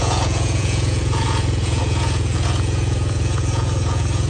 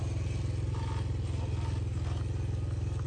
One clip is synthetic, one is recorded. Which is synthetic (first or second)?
first